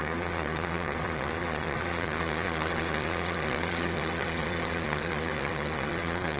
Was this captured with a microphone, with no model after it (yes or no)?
no